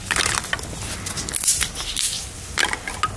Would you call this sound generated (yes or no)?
no